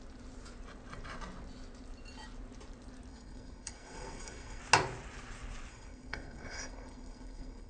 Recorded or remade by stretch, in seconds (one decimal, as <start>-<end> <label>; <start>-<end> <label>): 0.0-3.1 recorded; 3.1-4.6 remade; 4.6-5.7 recorded; 5.7-7.7 remade